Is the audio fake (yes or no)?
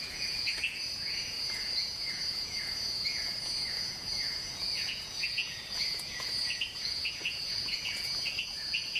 yes